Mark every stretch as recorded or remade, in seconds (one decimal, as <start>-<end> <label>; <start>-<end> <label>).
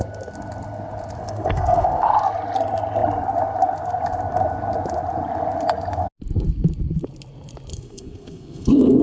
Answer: 0.0-1.2 recorded; 1.2-2.1 remade; 2.1-7.7 recorded; 7.7-9.0 remade